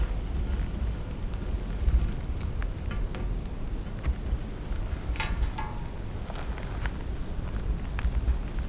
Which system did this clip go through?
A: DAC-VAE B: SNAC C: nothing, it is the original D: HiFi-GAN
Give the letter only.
C